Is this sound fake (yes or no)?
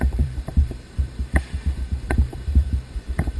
yes